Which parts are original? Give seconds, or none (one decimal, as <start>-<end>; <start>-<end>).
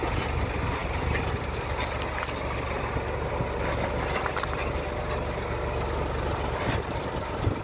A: 0.0-7.6